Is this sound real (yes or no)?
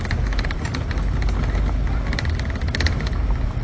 yes